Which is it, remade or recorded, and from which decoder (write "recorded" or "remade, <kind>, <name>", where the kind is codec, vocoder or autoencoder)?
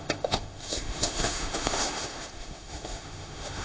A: remade, autoencoder, DAC-VAE